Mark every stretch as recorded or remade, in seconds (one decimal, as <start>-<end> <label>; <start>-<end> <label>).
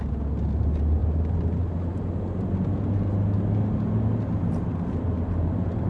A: 0.0-5.9 recorded